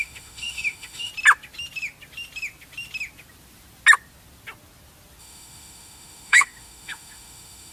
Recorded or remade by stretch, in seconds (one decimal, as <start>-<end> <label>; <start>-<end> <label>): 0.0-1.1 remade; 1.1-5.2 recorded; 5.2-7.7 remade